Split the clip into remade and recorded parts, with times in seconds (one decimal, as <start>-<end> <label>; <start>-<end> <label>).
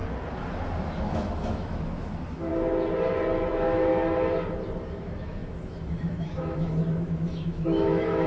0.0-1.0 recorded; 1.0-2.5 remade; 2.5-3.5 recorded; 3.5-3.9 remade; 3.9-4.9 recorded; 4.9-8.3 remade